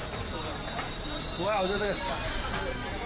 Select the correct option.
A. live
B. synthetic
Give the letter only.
A